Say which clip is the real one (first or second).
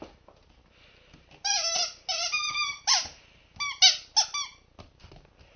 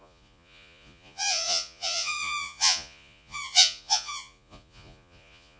first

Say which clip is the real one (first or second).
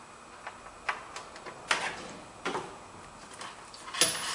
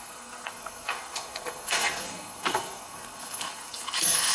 first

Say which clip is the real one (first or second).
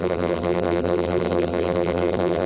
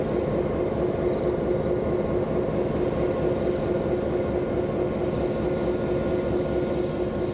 second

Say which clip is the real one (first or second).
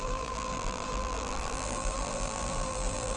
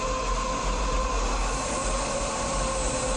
second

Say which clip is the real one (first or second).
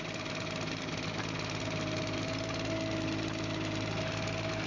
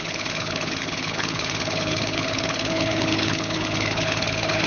first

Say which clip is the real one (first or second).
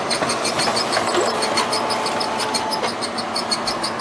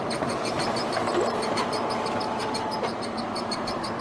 first